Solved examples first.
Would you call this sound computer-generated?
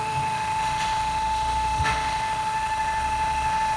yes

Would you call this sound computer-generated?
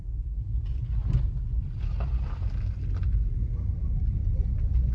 no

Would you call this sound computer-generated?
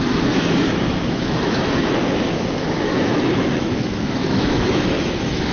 yes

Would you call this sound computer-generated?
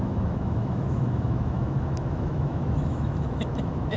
yes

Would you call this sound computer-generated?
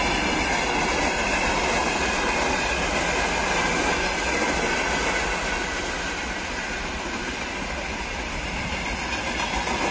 no